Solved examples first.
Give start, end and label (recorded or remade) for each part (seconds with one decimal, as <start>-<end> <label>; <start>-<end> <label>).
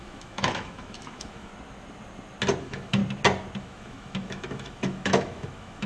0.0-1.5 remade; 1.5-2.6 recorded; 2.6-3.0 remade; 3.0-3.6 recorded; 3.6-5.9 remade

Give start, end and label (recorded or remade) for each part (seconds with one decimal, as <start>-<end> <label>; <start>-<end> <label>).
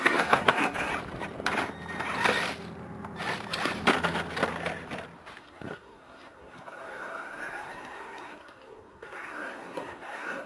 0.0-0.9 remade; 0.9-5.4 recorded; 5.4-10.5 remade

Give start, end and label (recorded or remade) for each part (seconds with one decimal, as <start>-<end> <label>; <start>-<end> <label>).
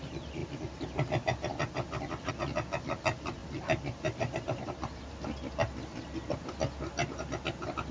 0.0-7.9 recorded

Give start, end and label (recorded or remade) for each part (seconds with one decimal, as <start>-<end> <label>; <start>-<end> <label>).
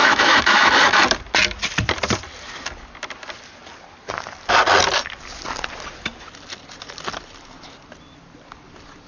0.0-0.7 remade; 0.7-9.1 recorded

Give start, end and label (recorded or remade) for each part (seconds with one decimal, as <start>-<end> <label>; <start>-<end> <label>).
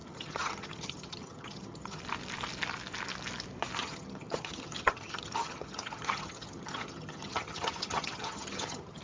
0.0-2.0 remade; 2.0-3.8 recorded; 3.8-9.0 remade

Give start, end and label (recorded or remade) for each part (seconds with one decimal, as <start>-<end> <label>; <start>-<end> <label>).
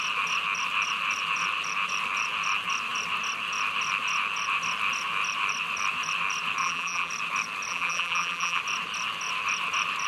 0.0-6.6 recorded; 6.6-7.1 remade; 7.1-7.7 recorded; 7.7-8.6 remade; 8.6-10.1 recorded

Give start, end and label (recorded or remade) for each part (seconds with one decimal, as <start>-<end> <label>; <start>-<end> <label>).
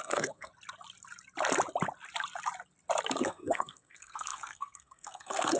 0.0-0.5 remade; 0.5-3.2 recorded; 3.2-5.6 remade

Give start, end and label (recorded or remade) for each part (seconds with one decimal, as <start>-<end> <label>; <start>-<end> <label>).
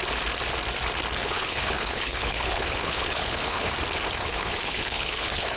0.0-1.2 recorded; 1.2-3.7 remade; 3.7-4.2 recorded; 4.2-5.6 remade